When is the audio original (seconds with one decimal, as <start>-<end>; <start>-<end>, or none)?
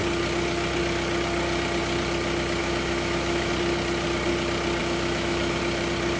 0.0-2.6; 3.5-4.8; 5.6-6.2